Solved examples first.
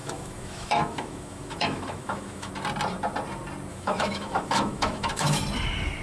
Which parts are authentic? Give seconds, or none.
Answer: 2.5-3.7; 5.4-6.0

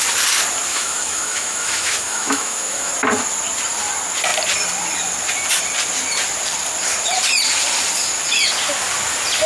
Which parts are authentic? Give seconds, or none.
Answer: 0.0-0.7; 2.9-9.5

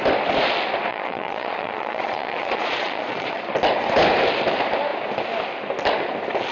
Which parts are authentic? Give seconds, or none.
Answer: 0.0-0.9; 3.5-6.5